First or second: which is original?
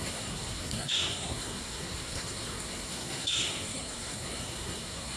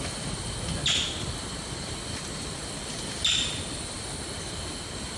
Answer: second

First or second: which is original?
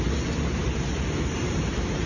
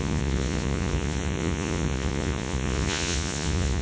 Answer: first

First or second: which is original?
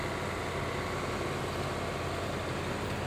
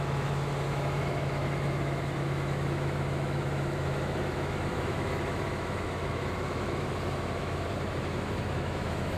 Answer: first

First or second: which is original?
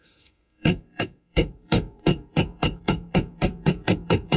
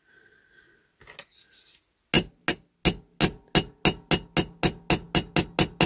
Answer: second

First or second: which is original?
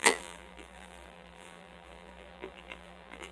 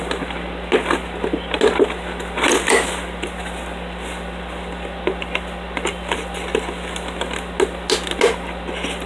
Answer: second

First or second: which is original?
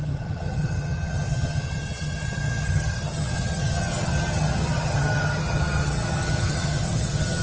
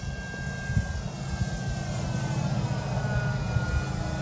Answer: second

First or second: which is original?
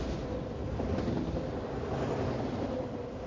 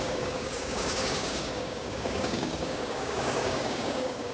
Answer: first